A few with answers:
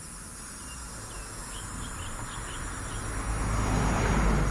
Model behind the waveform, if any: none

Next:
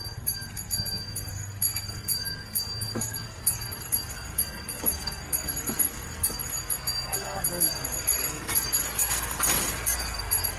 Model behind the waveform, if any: codec, SNAC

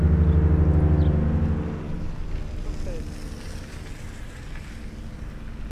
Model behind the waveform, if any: none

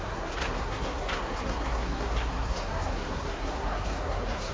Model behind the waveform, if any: codec, SNAC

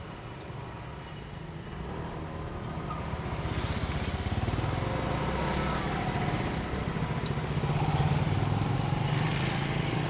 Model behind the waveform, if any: none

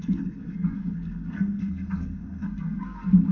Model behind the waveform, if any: codec, SNAC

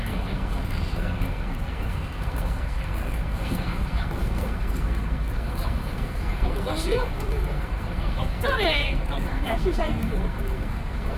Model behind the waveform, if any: codec, SNAC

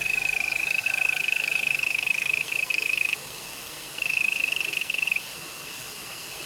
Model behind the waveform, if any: codec, SNAC